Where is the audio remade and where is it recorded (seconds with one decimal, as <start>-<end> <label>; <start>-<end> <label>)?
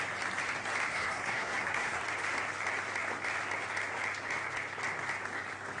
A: 0.0-0.9 recorded; 0.9-2.0 remade; 2.0-5.8 recorded